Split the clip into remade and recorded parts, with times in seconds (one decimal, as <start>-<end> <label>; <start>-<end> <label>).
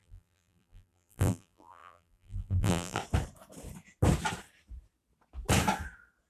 0.0-3.0 remade; 3.0-6.3 recorded